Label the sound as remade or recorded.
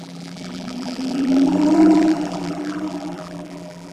remade